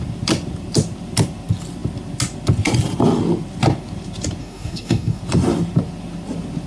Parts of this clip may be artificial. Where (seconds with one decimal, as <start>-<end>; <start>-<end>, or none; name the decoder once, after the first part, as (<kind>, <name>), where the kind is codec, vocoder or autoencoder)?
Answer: 4.4-5.2 (codec, DAC)